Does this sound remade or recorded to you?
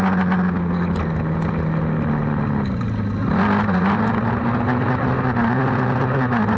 recorded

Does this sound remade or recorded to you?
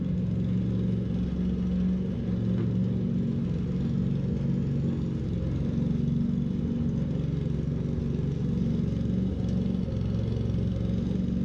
recorded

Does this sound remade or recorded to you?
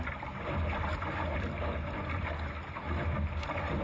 recorded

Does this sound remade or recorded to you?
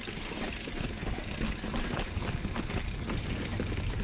recorded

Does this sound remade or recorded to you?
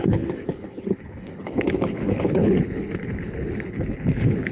remade